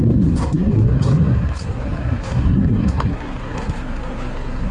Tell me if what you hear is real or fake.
fake